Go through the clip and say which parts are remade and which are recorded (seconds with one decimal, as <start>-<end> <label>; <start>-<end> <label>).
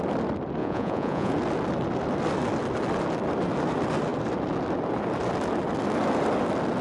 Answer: 0.0-0.6 recorded; 0.6-1.3 remade; 1.3-6.8 recorded